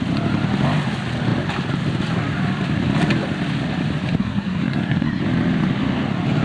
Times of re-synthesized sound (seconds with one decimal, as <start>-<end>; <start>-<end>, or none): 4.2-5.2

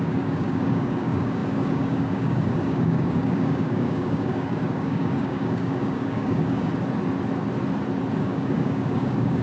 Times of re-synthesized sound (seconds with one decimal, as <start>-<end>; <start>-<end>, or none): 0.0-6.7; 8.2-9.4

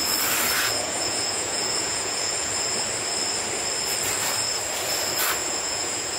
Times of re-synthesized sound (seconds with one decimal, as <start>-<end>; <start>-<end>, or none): 0.6-2.5; 5.4-6.2

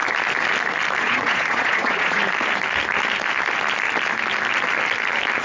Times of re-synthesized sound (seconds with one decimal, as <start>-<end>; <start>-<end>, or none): 1.0-2.2

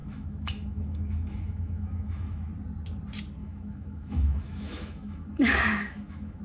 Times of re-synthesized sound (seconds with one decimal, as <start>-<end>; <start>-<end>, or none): 0.0-2.5; 3.4-6.4

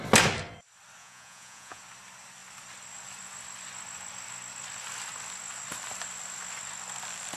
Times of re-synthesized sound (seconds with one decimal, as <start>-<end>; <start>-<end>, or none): 1.0-1.8

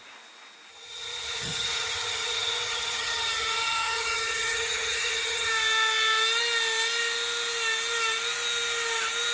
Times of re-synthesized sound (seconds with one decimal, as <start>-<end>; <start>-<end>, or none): 0.7-5.5